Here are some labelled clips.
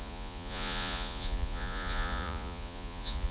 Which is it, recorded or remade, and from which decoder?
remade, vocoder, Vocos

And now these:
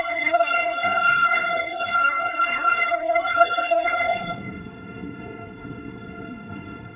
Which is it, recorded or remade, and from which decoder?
remade, codec, SNAC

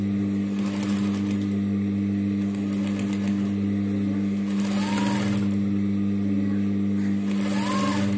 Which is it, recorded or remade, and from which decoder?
recorded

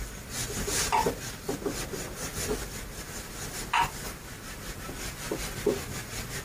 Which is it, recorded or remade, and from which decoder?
recorded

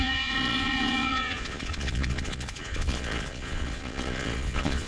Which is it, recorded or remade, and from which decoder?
remade, vocoder, Vocos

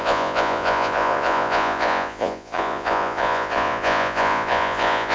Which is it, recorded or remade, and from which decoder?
remade, vocoder, Vocos